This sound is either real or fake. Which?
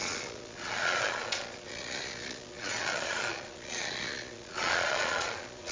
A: fake